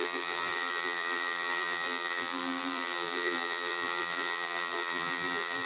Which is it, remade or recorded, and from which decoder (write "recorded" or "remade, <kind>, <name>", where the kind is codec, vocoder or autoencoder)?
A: remade, vocoder, BigVGAN v2